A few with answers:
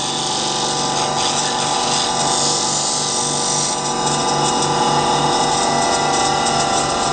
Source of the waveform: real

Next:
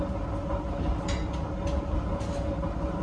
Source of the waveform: real